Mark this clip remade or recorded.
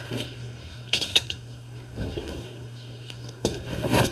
remade